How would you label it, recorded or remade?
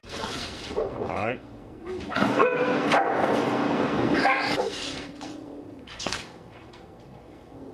remade